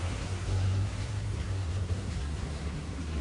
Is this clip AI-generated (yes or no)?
yes